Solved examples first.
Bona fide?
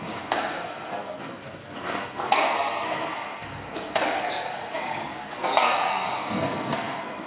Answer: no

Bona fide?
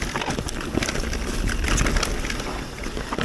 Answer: yes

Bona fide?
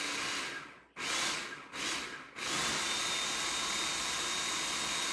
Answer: yes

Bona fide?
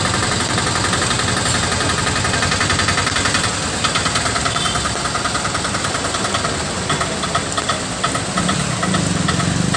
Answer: yes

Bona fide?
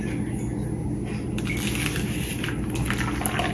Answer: yes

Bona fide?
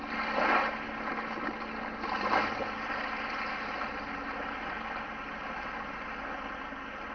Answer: yes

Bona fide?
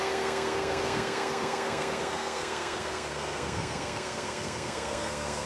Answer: no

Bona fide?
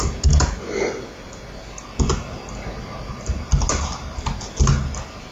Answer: yes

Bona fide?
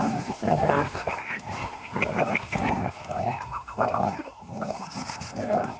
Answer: no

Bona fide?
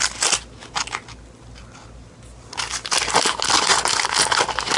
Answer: yes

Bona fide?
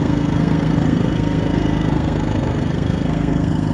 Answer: no